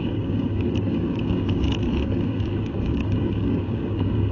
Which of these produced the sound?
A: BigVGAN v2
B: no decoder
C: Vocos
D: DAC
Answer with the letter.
D